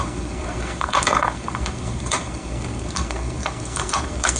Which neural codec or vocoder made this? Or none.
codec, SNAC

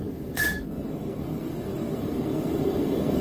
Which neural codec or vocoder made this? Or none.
codec, SNAC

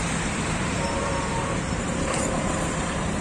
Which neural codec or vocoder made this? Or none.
vocoder, BigVGAN v2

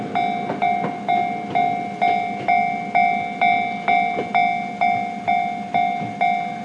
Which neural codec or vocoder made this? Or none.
none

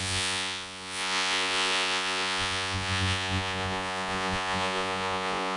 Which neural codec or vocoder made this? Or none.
vocoder, Vocos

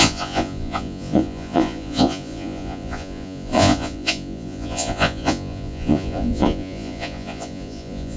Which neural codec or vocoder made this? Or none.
vocoder, Vocos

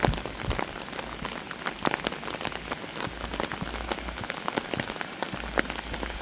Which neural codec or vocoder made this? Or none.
none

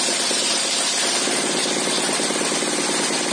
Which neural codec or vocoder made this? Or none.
none